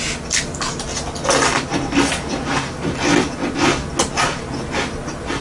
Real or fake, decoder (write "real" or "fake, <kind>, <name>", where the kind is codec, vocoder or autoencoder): real